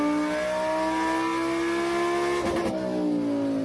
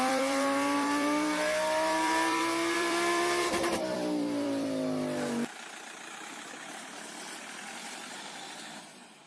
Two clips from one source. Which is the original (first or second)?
first